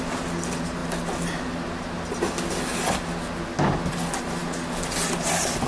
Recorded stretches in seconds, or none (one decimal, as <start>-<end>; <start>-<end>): 0.0-5.7